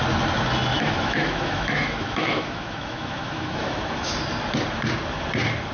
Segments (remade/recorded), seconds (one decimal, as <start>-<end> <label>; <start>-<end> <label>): 0.0-0.7 recorded; 0.7-4.1 remade; 4.1-5.7 recorded